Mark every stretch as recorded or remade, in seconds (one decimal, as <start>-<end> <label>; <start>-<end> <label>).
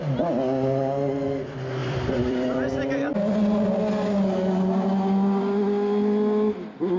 0.0-1.8 recorded; 1.8-3.1 remade; 3.1-7.0 recorded